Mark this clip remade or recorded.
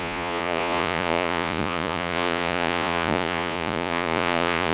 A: remade